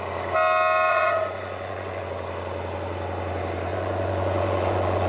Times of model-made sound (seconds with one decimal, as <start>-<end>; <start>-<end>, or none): 0.9-2.0; 3.7-5.1